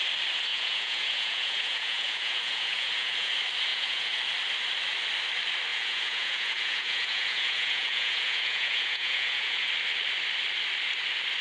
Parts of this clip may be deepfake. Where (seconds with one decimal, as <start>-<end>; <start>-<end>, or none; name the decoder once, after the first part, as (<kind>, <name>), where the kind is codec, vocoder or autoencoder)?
0.5-3.3 (vocoder, Vocos); 3.7-4.2; 5.7-9.7